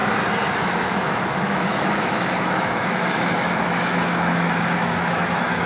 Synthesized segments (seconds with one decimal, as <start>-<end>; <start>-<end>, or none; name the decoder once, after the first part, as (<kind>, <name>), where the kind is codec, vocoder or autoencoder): 0.6-5.7 (autoencoder, DAC-VAE)